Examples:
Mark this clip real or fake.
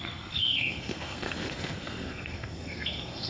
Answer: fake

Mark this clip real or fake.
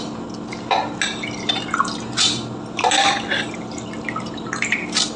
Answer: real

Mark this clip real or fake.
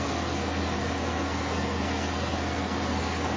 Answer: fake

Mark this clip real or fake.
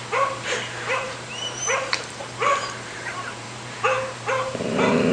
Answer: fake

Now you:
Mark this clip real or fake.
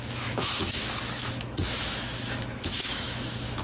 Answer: fake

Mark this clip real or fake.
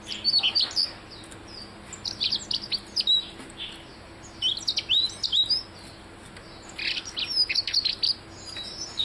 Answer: real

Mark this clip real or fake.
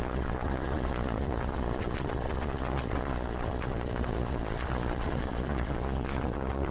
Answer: fake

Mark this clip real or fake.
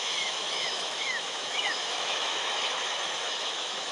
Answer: fake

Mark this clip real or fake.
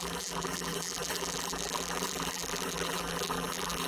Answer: fake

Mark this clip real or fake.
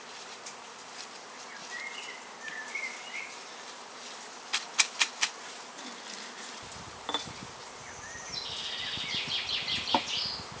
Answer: real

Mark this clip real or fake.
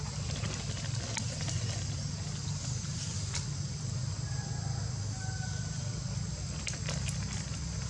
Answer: real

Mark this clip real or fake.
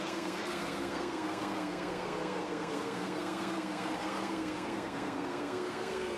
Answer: fake